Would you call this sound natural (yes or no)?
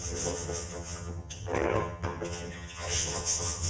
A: no